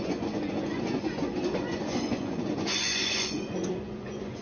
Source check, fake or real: fake